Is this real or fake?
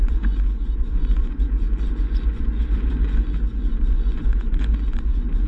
fake